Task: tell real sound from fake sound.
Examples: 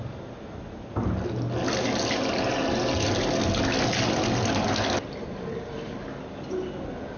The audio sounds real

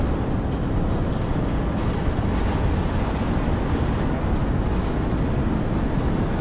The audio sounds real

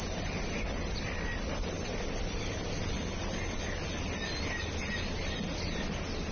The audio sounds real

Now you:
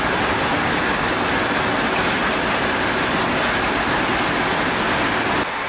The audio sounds real